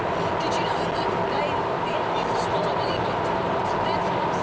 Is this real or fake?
real